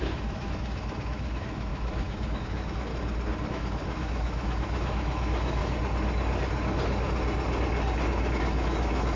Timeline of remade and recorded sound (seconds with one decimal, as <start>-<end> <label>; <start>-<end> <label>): 0.0-2.9 remade; 2.9-3.5 recorded; 3.5-5.6 remade; 5.6-8.3 recorded; 8.3-9.2 remade